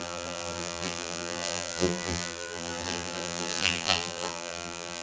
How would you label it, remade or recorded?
remade